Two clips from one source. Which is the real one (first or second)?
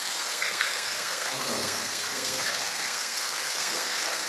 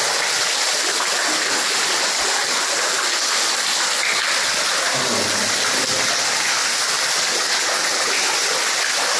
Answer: second